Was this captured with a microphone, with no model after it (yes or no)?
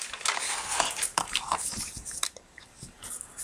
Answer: no